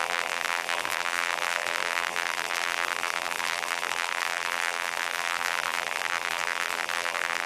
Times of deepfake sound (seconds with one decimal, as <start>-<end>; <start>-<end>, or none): 0.0-7.5